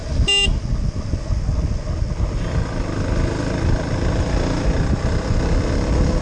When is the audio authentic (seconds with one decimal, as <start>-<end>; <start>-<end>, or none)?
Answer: 0.0-6.2